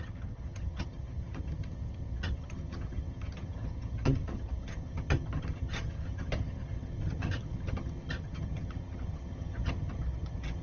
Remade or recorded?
remade